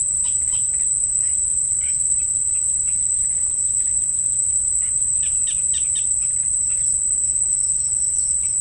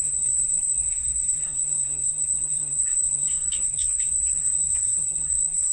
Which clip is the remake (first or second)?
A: second